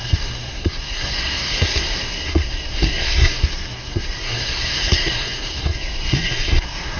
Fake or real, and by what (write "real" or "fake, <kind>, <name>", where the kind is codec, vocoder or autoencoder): fake, codec, SNAC